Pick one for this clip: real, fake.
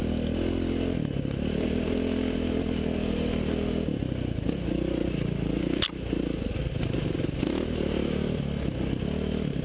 real